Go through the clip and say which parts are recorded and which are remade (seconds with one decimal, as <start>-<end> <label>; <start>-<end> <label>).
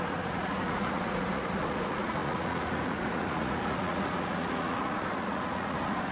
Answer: 0.0-6.1 remade